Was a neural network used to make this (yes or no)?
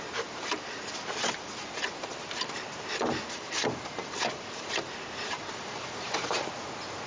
yes